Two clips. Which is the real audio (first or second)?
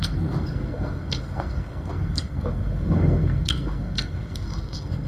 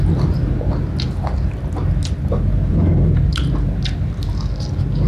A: second